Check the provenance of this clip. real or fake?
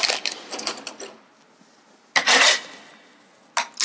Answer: real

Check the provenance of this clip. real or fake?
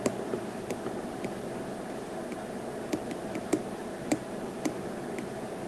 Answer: real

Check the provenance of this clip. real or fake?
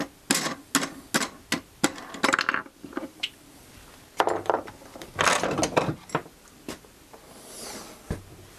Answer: real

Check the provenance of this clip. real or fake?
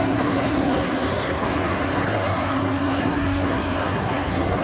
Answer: fake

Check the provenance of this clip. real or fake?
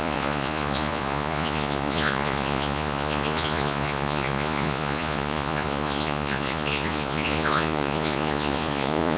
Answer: fake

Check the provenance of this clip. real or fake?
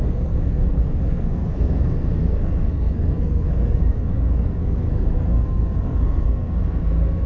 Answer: fake